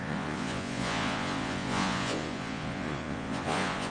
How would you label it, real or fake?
fake